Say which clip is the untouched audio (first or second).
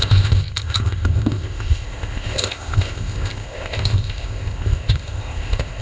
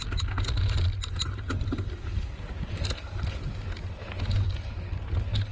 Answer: second